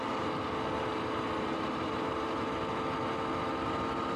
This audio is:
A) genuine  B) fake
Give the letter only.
A